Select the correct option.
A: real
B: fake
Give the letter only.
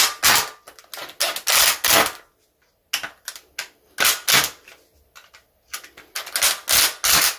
A